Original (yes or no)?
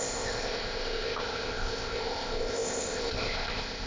no